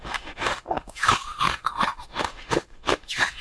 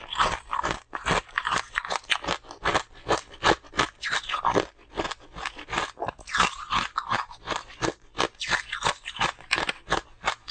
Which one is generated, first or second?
first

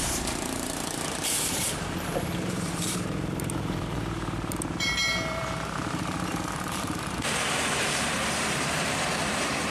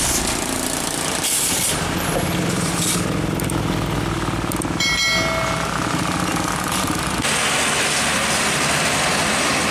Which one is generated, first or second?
first